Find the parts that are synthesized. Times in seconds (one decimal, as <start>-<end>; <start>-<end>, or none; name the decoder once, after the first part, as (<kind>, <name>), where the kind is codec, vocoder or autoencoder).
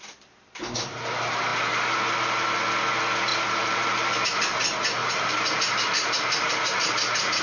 3.3-4.2 (vocoder, BigVGAN v2); 5.0-7.4